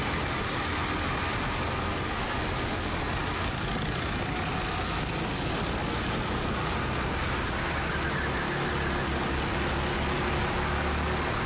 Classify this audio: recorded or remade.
recorded